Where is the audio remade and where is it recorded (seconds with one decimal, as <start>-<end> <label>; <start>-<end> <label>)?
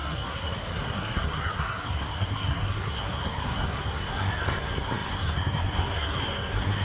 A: 0.0-6.8 remade